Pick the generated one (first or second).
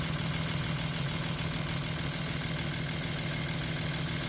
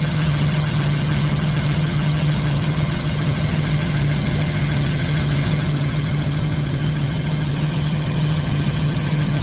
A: second